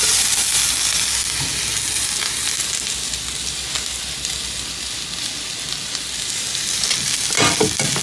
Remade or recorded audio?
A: recorded